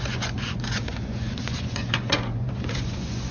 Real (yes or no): no